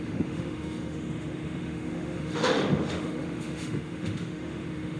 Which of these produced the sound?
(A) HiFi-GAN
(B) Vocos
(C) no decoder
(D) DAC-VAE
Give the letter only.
D